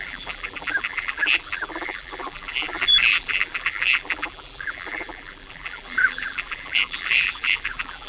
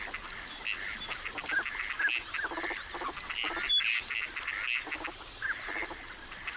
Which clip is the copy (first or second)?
first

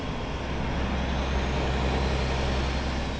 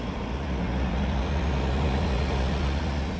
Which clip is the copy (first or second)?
second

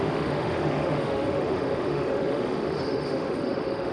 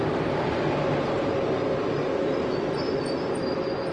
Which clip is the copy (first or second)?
first